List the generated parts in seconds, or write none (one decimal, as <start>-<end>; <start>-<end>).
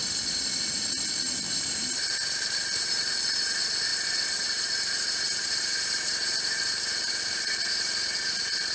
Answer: 1.7-8.7